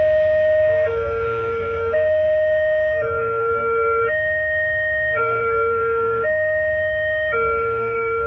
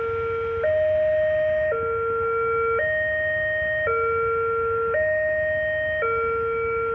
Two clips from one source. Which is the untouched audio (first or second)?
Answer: second